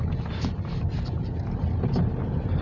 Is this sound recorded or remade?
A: recorded